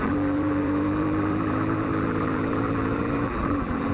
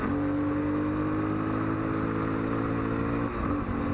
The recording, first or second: second